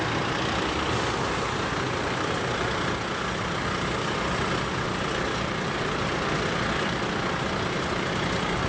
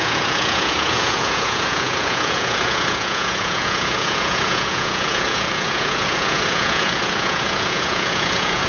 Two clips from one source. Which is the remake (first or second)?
second